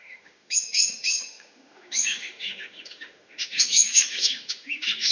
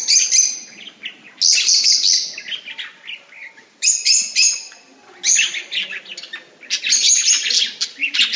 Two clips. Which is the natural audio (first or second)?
second